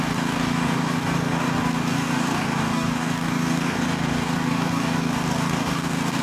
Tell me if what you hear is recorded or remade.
remade